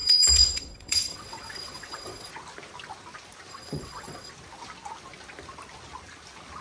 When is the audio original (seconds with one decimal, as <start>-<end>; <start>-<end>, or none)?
2.3-3.5; 4.3-6.6